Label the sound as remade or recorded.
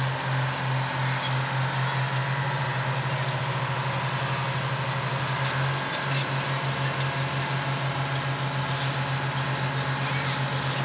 recorded